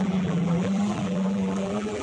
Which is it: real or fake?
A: fake